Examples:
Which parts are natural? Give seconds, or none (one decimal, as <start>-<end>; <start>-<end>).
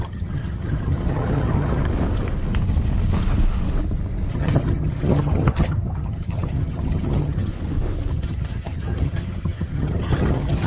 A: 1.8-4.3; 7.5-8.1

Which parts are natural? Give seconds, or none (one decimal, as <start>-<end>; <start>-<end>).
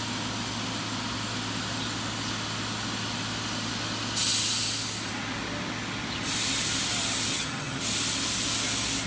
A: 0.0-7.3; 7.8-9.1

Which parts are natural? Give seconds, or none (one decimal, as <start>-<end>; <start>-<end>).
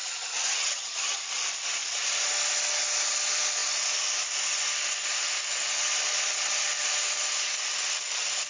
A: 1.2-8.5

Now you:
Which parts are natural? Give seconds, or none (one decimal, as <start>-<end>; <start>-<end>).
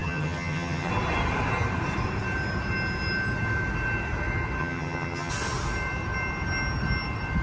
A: 0.9-4.6; 5.3-7.4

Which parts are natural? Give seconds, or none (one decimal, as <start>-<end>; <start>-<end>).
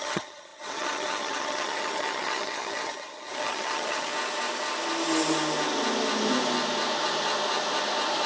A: 4.1-8.3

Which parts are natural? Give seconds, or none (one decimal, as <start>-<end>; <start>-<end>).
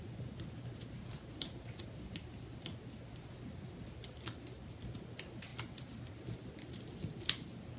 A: 0.0-7.8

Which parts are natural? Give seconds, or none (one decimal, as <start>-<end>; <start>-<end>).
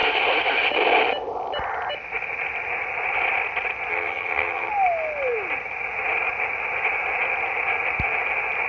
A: 0.0-3.9; 4.7-8.7